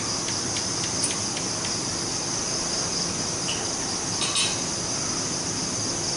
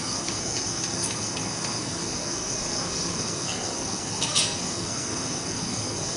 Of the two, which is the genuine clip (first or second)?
first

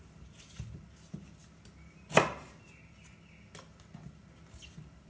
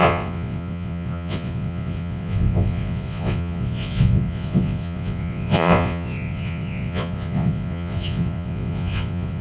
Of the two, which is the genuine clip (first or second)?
first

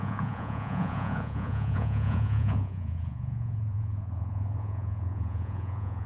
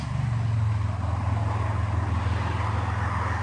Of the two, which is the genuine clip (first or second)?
second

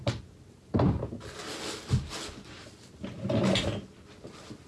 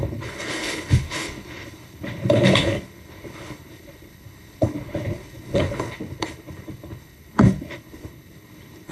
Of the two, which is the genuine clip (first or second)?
first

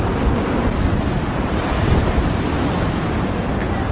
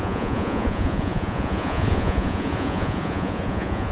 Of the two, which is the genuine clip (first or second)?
first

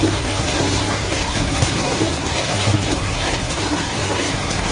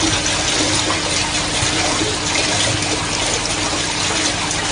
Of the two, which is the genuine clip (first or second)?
second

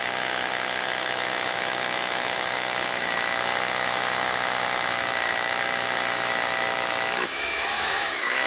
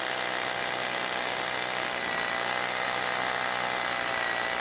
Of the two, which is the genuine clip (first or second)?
second